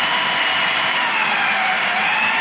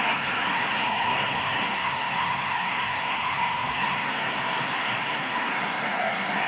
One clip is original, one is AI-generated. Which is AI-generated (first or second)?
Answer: second